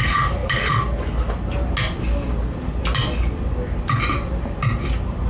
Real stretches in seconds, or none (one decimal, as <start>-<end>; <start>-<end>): 0.0-5.3